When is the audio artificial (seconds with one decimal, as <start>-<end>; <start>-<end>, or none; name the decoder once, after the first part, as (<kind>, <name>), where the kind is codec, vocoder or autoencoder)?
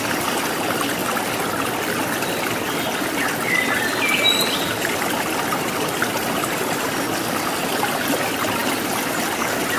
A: none